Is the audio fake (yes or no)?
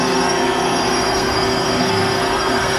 yes